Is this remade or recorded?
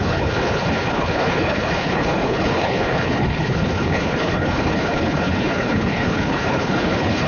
remade